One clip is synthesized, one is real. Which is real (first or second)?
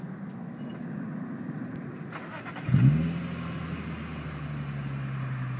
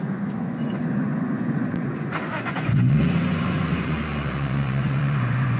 first